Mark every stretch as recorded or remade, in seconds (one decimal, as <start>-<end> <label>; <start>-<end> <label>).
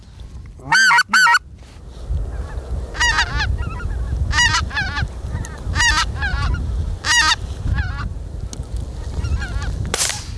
0.0-10.4 recorded